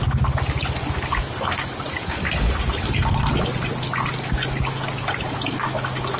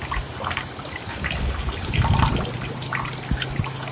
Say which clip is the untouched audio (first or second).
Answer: first